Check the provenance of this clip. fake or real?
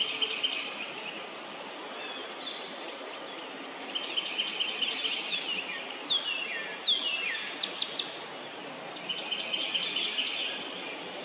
real